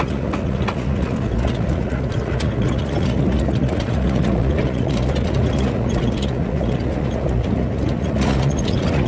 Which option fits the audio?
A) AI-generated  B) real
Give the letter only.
A